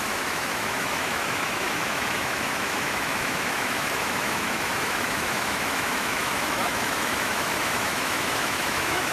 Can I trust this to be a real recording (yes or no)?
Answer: no